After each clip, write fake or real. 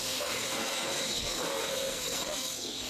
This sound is fake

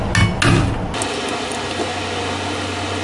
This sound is real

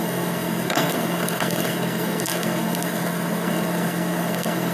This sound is fake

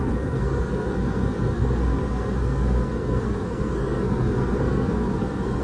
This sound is fake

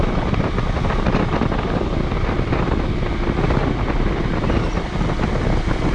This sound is real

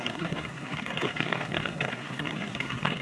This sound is fake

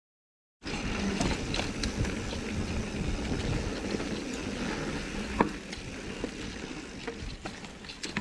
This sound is real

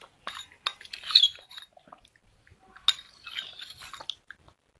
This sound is real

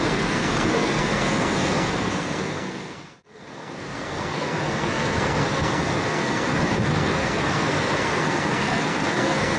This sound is fake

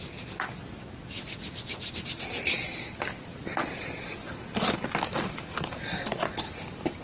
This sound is real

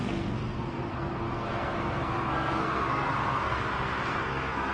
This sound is fake